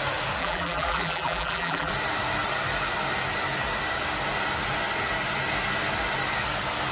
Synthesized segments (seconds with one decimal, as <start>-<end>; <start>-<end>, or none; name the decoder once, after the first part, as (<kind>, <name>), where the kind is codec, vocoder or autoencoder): 0.4-1.9 (vocoder, BigVGAN v2)